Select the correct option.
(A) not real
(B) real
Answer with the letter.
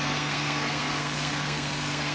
A